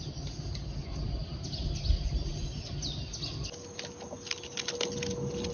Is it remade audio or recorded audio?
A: recorded